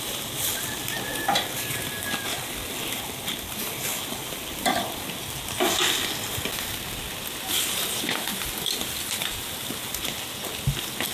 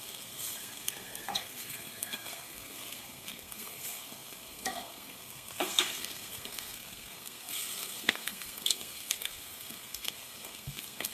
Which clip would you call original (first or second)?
first